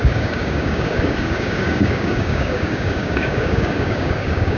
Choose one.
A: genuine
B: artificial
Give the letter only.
B